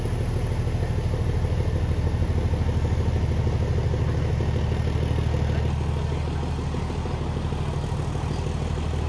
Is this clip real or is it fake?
real